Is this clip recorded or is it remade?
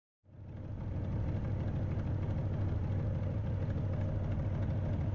recorded